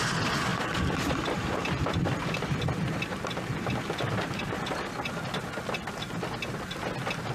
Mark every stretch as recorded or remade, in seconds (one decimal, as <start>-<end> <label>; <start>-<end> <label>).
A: 0.0-0.5 recorded; 0.5-4.9 remade; 4.9-7.3 recorded

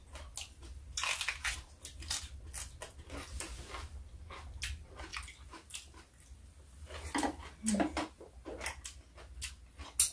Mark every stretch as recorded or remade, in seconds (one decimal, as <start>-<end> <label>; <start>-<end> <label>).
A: 0.0-10.1 recorded

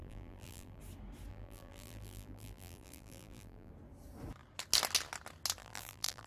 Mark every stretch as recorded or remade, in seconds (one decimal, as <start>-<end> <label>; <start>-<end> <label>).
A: 0.0-0.8 remade; 0.8-1.3 recorded; 1.3-3.7 remade; 3.7-5.6 recorded; 5.6-6.3 remade

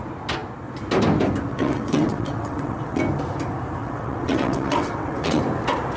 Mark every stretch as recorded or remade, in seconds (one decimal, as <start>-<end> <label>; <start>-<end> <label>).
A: 0.0-1.5 recorded; 1.5-3.0 remade; 3.0-3.8 recorded; 3.8-5.4 remade; 5.4-6.0 recorded

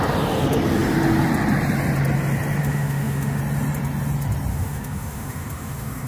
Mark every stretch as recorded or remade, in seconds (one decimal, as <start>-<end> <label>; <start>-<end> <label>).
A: 0.0-2.6 recorded; 2.6-3.4 remade; 3.4-4.5 recorded; 4.5-6.1 remade